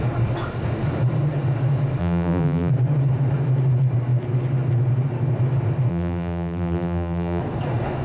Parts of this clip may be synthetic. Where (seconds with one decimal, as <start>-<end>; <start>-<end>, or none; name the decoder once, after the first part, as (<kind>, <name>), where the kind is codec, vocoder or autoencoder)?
2.0-2.7 (vocoder, BigVGAN v2); 5.9-7.4